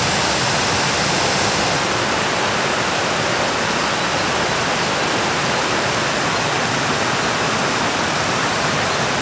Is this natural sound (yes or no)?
yes